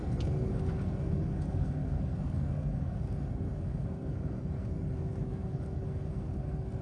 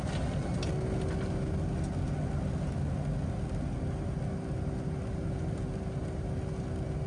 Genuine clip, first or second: second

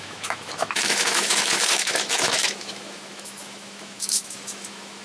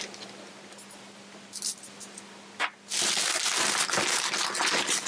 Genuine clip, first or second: second